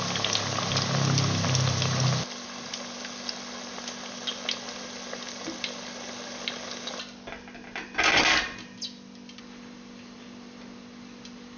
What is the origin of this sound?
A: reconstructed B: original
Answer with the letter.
B